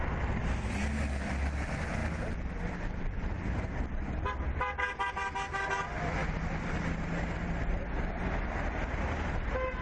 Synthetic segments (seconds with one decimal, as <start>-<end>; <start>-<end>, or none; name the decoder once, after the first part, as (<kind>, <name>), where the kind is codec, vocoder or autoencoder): none